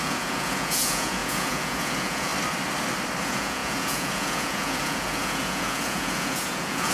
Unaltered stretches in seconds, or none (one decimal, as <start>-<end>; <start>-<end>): 2.3-3.2